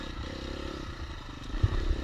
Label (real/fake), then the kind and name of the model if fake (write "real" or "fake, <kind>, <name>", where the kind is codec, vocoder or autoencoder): real